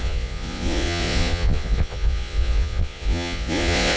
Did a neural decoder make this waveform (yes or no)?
yes